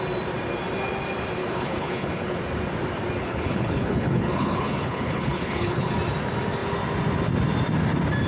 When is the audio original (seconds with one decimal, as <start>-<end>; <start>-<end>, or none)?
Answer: 0.0-1.4; 2.4-3.2; 5.9-8.3